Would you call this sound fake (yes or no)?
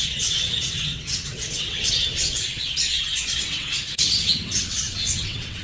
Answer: yes